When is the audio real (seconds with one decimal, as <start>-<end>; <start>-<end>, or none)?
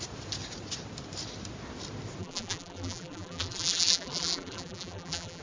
0.0-2.2